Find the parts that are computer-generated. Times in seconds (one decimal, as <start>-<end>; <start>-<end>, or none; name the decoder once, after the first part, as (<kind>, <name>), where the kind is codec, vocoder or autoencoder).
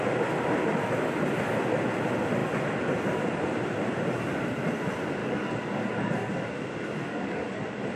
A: 5.2-6.3 (codec, DAC); 7.0-7.6